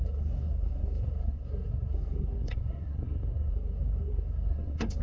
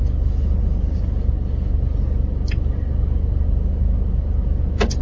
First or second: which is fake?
first